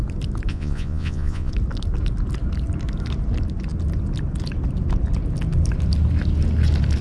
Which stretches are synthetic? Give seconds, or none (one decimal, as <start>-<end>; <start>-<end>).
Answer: 0.5-1.5